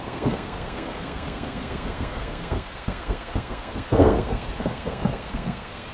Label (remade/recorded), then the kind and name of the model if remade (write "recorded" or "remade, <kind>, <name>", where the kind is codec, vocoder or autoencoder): remade, codec, SNAC